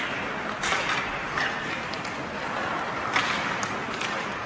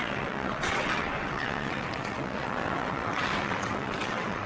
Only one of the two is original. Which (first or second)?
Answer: first